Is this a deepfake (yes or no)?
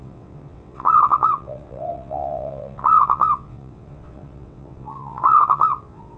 yes